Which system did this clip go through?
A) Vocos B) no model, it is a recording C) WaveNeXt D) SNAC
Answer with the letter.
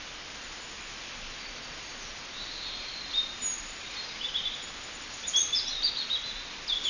B